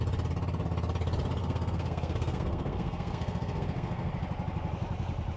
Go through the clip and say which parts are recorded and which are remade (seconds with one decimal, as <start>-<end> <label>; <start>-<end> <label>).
0.0-1.4 recorded; 1.4-4.1 remade; 4.1-5.4 recorded